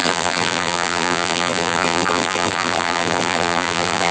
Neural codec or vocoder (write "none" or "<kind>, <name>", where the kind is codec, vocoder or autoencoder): vocoder, BigVGAN v2